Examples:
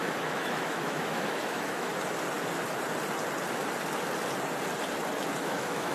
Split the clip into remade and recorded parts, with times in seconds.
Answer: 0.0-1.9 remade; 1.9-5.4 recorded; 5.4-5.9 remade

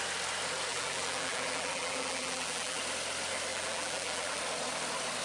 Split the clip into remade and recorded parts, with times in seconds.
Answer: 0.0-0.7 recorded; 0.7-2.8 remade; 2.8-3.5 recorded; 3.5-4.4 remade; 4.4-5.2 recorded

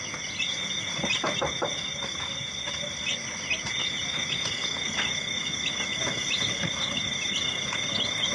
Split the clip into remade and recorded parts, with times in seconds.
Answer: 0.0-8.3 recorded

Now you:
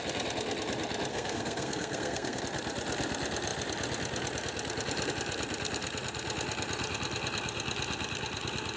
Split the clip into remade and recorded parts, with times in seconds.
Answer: 0.0-1.1 recorded; 1.1-2.4 remade; 2.4-8.8 recorded

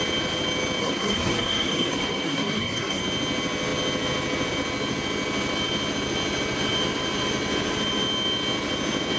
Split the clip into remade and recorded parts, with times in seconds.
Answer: 0.0-0.8 recorded; 0.8-3.0 remade; 3.0-9.2 recorded

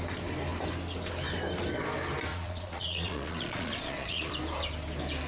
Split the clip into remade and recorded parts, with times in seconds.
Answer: 0.0-2.3 recorded; 2.3-4.3 remade; 4.3-5.3 recorded